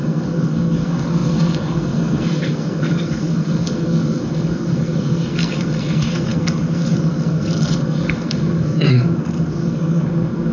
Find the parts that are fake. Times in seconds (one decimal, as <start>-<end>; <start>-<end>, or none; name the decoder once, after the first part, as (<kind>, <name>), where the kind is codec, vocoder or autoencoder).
0.0-10.5 (codec, SNAC)